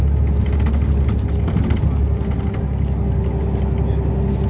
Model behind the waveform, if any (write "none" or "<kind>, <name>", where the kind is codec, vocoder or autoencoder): none